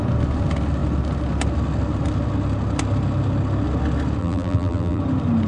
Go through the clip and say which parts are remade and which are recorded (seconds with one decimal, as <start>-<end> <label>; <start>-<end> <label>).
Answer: 0.0-4.2 recorded; 4.2-5.0 remade; 5.0-5.5 recorded